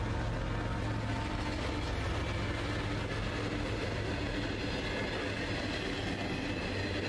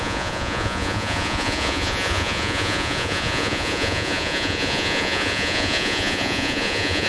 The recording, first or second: first